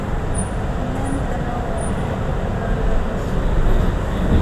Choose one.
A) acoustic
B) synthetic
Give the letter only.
A